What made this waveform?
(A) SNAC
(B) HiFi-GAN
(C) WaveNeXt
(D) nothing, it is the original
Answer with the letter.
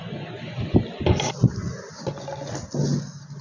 D